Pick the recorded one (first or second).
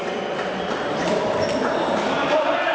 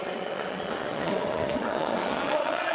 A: first